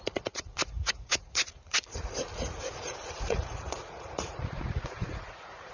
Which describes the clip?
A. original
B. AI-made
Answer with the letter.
B